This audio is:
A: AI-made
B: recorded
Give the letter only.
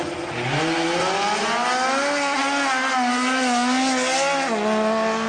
B